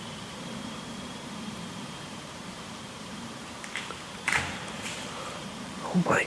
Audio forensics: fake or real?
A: fake